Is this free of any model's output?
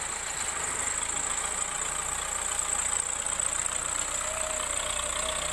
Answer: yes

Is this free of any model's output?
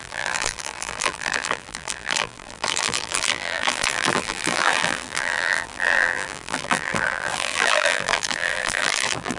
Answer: no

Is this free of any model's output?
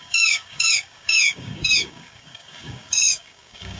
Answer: no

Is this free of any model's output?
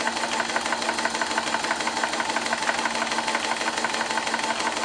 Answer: yes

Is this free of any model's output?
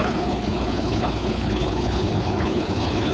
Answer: no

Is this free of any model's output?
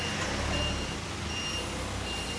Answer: yes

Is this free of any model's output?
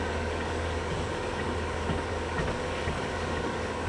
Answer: no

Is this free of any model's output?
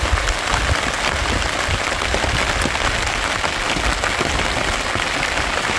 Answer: yes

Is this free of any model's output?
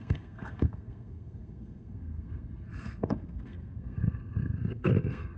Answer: no